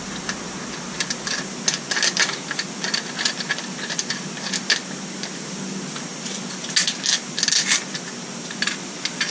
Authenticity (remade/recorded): recorded